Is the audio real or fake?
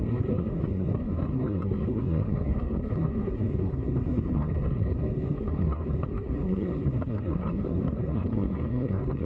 fake